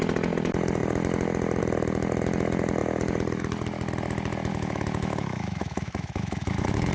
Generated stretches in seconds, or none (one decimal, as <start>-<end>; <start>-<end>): 4.5-6.9